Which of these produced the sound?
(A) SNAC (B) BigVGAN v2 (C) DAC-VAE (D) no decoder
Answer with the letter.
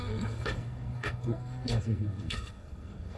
A